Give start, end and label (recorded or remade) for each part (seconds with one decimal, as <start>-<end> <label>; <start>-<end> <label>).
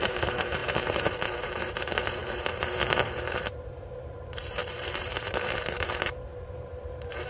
0.0-7.3 remade